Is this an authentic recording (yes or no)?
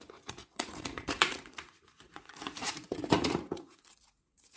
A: no